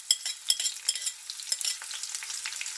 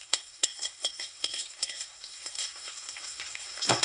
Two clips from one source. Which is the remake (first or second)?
second